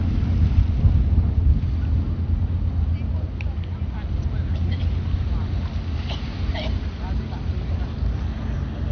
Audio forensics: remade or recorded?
recorded